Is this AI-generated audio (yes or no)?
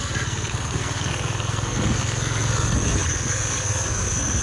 yes